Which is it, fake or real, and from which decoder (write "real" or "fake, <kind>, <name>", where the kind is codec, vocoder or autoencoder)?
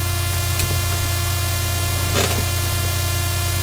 real